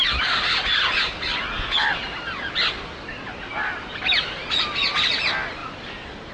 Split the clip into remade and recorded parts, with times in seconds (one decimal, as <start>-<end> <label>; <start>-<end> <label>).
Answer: 0.0-6.3 recorded